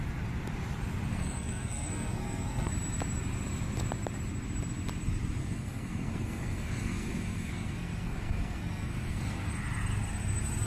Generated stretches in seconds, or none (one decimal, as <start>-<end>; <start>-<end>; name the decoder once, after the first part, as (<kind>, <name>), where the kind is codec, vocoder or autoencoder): 1.1-2.7 (codec, SNAC); 5.4-9.5